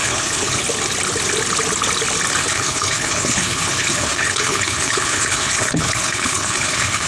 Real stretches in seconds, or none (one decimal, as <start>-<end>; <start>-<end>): 0.6-2.4